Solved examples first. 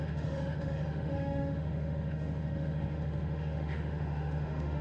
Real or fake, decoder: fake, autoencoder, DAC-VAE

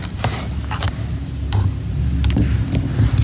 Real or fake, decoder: real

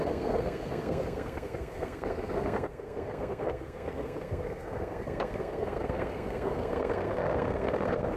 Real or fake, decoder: fake, codec, SNAC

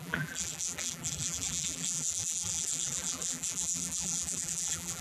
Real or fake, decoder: fake, vocoder, BigVGAN v2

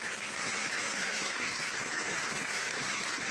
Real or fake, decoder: fake, codec, SNAC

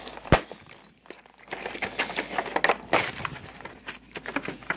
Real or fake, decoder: real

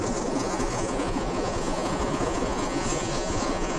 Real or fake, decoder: fake, vocoder, Vocos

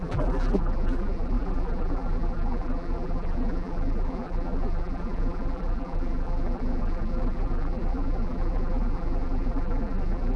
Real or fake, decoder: fake, vocoder, BigVGAN v2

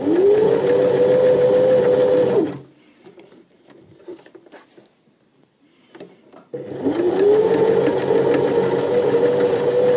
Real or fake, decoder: real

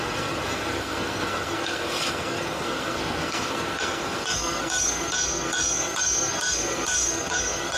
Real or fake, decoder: fake, codec, SNAC